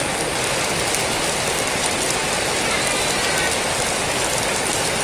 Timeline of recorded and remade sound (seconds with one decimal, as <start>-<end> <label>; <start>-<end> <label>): 0.0-5.0 recorded